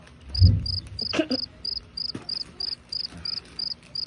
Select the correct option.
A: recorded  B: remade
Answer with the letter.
A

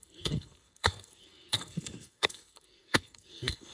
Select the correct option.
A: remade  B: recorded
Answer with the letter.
A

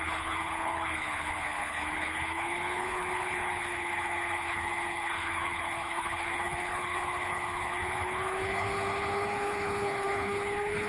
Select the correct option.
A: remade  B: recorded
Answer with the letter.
A